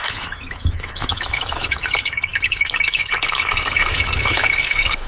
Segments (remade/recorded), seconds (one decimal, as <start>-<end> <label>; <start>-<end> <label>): 0.0-5.1 remade